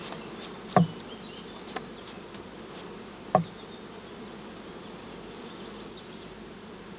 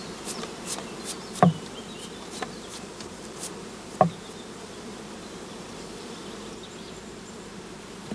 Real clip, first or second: first